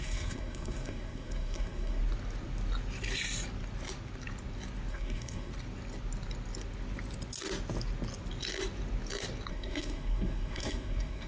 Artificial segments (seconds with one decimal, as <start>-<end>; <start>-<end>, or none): 0.0-2.0; 4.9-5.5; 9.5-11.3